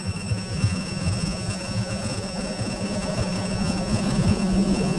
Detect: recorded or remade remade